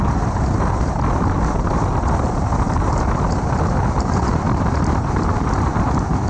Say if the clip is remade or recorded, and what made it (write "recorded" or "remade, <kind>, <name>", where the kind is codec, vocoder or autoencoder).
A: recorded